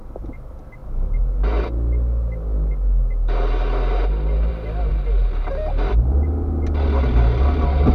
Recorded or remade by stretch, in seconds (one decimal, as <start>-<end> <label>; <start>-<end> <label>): 0.0-7.9 recorded